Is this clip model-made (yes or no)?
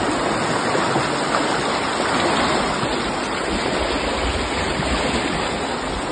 no